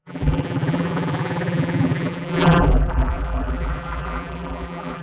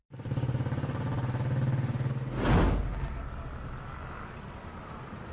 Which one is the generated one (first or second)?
first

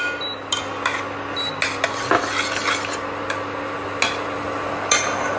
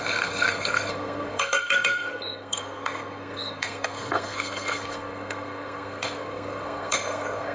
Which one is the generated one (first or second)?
second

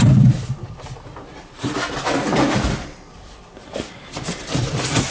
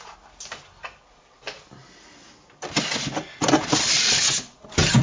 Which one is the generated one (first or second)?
first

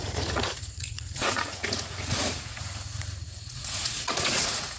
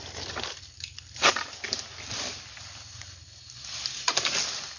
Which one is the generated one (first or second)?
first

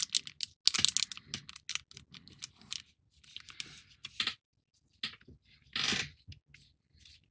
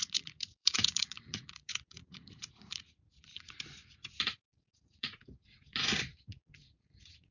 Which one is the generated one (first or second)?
second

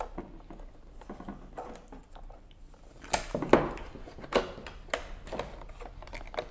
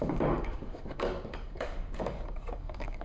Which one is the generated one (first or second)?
second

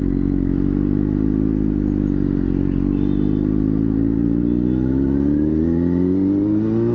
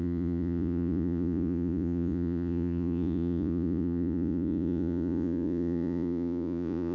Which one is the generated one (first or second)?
second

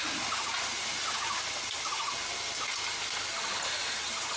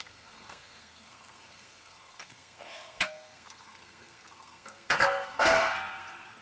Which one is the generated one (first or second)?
second